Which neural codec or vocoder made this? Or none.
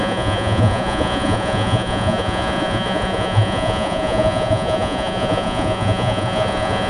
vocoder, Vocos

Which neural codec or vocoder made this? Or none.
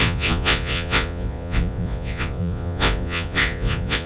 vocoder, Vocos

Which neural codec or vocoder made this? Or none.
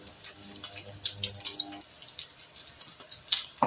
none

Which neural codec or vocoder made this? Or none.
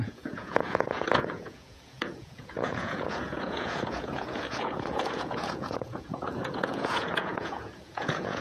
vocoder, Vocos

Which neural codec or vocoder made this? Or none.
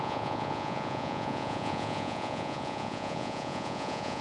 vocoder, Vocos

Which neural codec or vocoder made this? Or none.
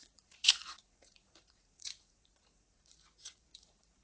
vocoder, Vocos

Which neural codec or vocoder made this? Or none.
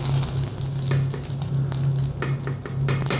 none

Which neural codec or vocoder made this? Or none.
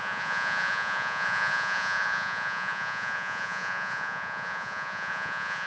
vocoder, Vocos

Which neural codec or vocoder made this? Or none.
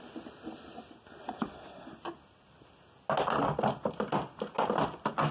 none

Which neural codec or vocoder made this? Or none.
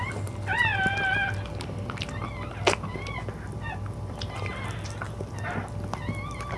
none